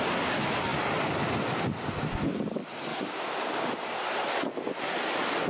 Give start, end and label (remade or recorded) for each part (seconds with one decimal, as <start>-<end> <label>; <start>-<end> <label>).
0.0-2.9 recorded; 2.9-3.7 remade; 3.7-5.5 recorded